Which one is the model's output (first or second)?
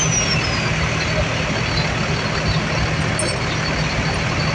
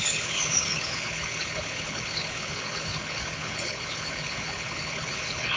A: second